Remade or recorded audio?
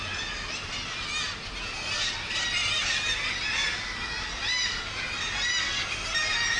recorded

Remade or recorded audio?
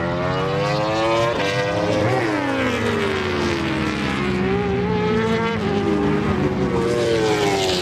recorded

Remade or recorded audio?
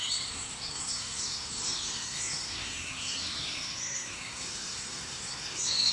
remade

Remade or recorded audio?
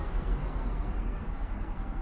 remade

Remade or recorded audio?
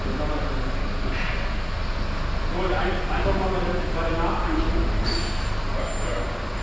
recorded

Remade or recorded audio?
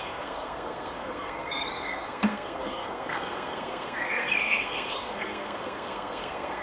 remade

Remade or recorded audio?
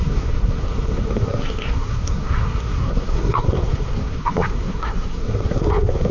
remade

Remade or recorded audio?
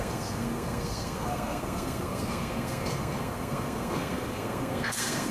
remade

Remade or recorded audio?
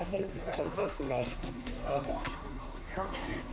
remade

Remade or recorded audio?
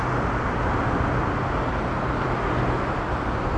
recorded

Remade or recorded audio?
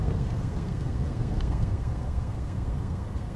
remade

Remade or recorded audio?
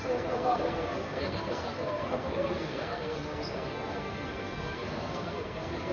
remade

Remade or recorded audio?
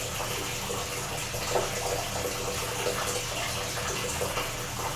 recorded